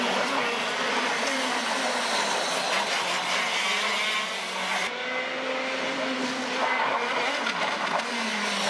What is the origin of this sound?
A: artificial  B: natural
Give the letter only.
B